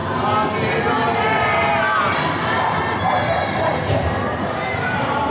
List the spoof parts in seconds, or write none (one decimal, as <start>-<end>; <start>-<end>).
none